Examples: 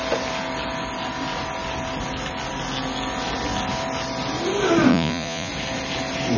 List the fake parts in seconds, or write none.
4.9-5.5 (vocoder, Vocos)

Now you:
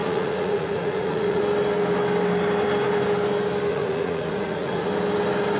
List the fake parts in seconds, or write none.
0.0-1.4 (vocoder, Vocos); 3.7-4.9

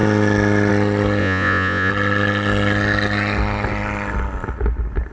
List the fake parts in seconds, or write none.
1.2-1.9 (vocoder, Vocos)

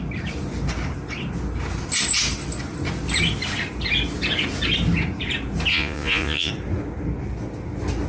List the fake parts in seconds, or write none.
5.7-6.5 (vocoder, Vocos)